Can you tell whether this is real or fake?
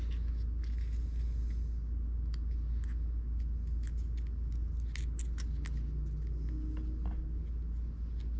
real